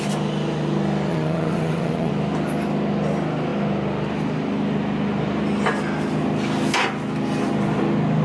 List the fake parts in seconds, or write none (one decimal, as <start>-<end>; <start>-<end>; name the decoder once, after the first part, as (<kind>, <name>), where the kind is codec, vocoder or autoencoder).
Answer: 1.1-2.1 (vocoder, WaveNeXt)